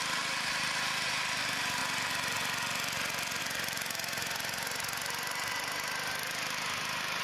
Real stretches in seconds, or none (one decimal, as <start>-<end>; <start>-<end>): 1.8-3.4